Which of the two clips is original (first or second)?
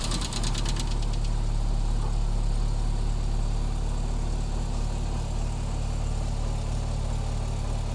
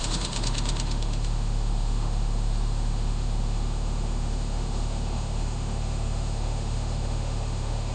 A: first